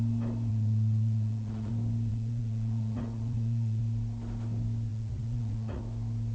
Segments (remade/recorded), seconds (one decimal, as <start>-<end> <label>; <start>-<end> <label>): 0.0-0.5 recorded; 0.5-1.7 remade; 1.7-2.1 recorded; 2.1-3.8 remade; 3.8-4.9 recorded; 4.9-5.8 remade; 5.8-6.3 recorded